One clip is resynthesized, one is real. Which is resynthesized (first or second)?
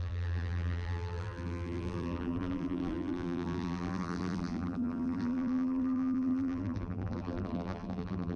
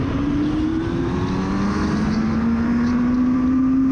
first